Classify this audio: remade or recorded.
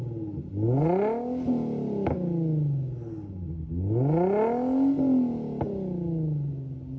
recorded